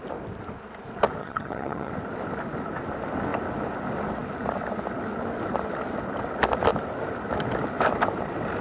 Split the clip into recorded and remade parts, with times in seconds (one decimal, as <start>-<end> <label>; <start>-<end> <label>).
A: 0.0-1.2 recorded; 1.2-1.9 remade; 1.9-8.6 recorded